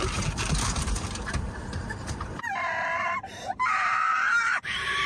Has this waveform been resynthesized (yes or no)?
yes